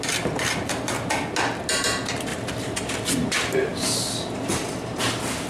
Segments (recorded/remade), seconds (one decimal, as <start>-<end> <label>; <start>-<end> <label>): 0.0-2.3 recorded; 2.3-2.9 remade; 2.9-5.5 recorded